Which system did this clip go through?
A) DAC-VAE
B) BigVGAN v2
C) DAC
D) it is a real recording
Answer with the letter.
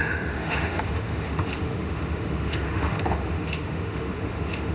A